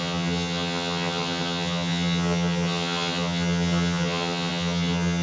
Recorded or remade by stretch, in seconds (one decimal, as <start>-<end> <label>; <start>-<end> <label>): 0.0-5.2 remade